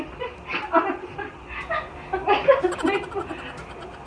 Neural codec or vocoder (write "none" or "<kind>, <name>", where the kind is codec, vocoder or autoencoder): none